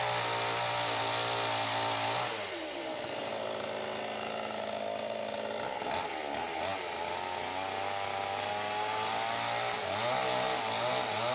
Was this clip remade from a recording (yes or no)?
no